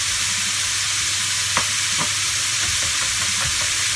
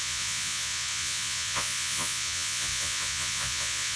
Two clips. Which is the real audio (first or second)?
first